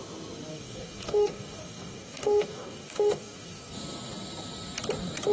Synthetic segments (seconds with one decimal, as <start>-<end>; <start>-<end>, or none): 0.5-3.7